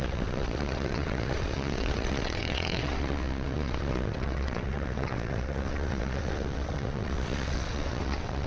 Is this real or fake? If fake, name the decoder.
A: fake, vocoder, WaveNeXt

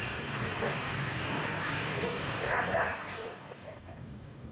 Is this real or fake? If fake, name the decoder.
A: fake, codec, DAC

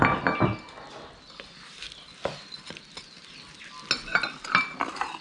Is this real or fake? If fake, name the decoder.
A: real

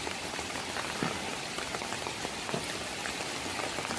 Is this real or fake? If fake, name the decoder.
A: real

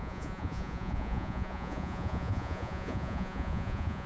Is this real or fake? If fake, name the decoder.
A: fake, vocoder, Vocos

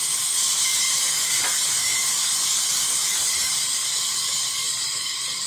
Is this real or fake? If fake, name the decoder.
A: fake, codec, DAC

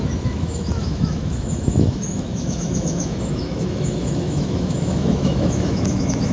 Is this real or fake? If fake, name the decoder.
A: fake, autoencoder, DAC-VAE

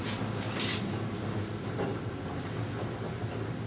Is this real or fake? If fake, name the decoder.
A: real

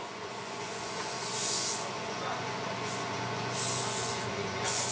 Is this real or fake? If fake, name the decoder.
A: fake, vocoder, Vocos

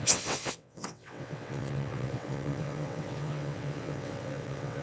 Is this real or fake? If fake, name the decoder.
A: fake, vocoder, WaveNeXt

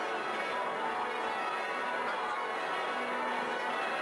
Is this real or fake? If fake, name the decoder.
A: real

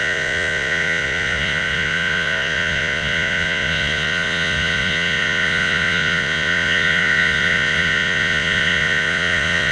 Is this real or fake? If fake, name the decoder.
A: fake, vocoder, Vocos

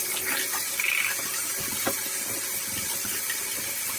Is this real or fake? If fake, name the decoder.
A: real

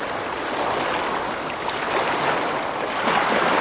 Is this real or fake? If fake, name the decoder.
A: real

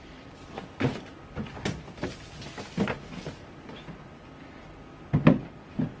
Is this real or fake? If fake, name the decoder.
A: real